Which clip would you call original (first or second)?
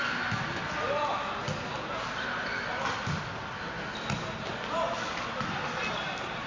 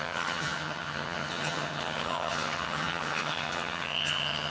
first